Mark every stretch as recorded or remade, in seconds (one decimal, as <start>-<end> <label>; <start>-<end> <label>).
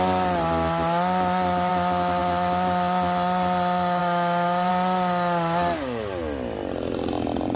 0.0-4.0 recorded; 4.0-4.7 remade; 4.7-7.6 recorded